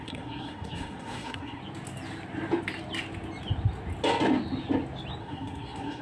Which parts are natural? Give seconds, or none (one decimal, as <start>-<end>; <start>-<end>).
1.6-5.2